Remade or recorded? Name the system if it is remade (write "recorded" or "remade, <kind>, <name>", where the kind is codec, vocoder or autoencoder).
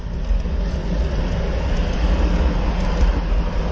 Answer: recorded